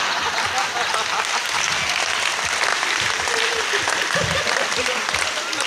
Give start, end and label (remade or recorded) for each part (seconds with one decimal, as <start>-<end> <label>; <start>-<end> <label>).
0.0-2.7 recorded; 2.7-3.6 remade; 3.6-5.7 recorded